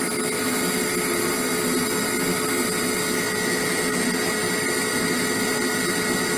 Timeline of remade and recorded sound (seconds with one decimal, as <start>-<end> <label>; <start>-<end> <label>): 0.0-6.4 recorded